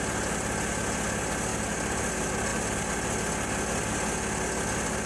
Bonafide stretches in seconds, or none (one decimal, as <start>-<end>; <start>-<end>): 0.0-5.1